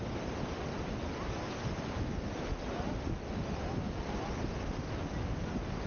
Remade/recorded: recorded